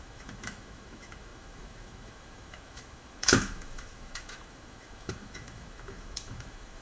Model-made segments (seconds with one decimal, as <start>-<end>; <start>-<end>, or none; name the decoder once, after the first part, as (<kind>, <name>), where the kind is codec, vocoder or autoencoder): 0.0-6.8 (autoencoder, DAC-VAE)

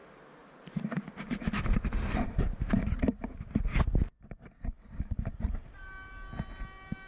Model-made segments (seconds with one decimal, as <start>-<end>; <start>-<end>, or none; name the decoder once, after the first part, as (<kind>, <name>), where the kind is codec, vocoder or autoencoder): 0.0-2.8 (vocoder, BigVGAN v2)

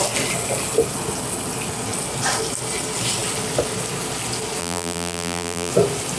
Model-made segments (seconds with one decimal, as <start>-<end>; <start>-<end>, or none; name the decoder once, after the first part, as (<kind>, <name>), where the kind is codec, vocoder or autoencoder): 4.6-5.7 (vocoder, BigVGAN v2)

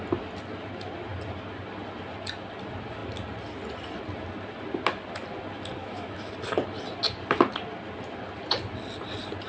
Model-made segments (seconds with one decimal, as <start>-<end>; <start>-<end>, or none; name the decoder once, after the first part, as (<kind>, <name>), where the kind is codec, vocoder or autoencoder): 5.8-6.3 (autoencoder, DAC-VAE)

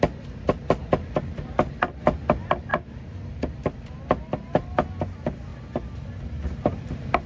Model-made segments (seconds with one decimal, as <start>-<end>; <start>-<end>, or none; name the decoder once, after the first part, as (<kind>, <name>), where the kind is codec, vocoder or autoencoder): 2.7-3.3 (vocoder, BigVGAN v2)

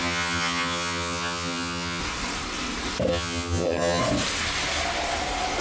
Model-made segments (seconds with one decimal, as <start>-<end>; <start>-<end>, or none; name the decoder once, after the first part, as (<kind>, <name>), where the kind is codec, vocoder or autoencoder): 0.0-2.0 (vocoder, HiFi-GAN); 3.1-4.0